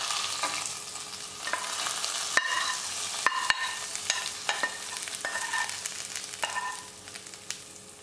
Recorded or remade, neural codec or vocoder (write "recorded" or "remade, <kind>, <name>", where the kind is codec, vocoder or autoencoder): recorded